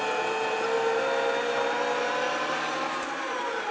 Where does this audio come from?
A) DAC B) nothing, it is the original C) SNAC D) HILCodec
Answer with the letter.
B